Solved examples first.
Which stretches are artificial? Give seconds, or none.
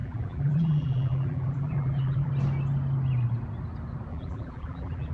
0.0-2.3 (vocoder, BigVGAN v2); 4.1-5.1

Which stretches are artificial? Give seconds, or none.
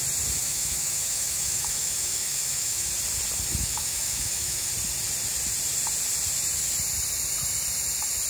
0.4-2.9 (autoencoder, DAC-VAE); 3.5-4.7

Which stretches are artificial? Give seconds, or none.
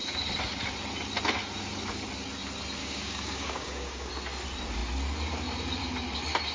2.8-4.1 (codec, DAC)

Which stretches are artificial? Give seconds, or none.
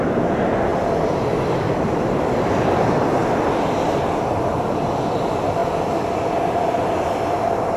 none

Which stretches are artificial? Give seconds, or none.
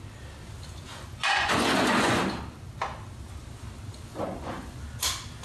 0.9-2.2 (vocoder, Vocos); 4.1-4.8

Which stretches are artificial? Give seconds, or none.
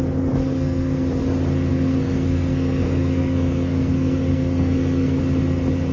0.4-1.1 (codec, SNAC); 1.7-5.2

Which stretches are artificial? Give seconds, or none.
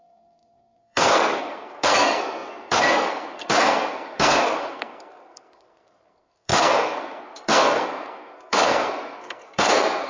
0.0-10.1 (codec, SNAC)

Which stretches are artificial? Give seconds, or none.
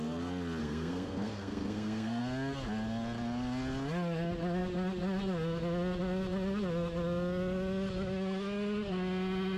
0.6-2.2 (codec, SNAC)